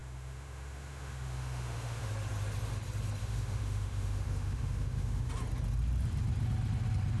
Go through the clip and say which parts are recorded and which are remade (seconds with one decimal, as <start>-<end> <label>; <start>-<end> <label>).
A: 0.0-2.1 remade; 2.1-3.2 recorded; 3.2-5.3 remade; 5.3-7.2 recorded